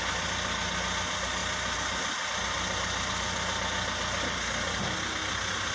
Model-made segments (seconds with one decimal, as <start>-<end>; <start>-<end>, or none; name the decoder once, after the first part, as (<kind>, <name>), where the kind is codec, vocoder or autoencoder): none